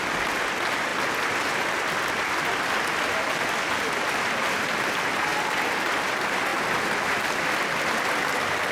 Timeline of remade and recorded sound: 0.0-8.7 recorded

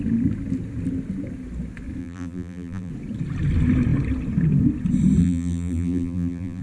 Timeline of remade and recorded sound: 0.0-2.0 recorded; 2.0-2.9 remade; 2.9-5.2 recorded; 5.2-6.6 remade

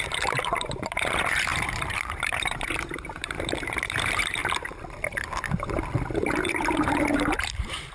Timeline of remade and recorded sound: 0.0-4.4 remade; 4.4-6.1 recorded; 6.1-7.9 remade

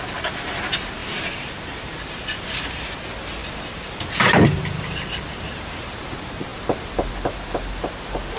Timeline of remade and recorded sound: 0.0-1.0 recorded; 1.0-2.4 remade; 2.4-3.4 recorded; 3.4-5.2 remade; 5.2-8.4 recorded